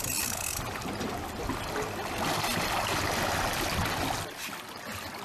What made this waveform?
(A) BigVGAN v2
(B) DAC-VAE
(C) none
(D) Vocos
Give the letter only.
C